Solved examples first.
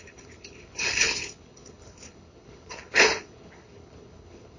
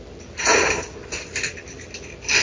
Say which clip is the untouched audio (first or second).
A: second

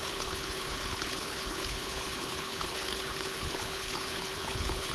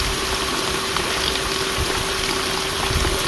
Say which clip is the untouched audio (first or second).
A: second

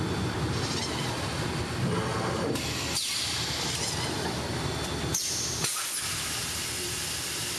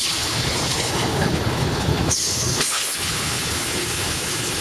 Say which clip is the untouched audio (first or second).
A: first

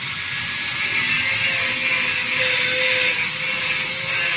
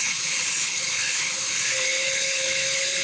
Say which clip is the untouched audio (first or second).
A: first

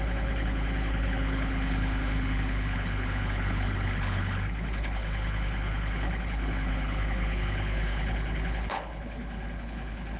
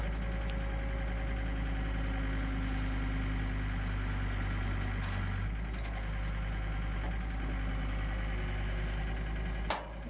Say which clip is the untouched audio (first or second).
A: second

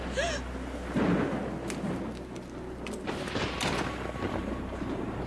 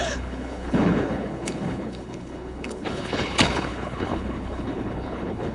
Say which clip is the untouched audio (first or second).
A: first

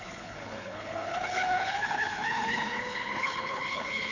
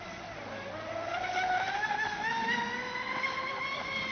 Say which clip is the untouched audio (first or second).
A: second